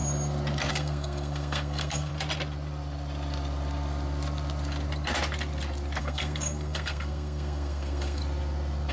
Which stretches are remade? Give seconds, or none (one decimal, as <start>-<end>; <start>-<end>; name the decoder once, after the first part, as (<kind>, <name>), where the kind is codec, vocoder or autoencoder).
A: 0.7-2.1 (codec, SNAC); 6.0-8.2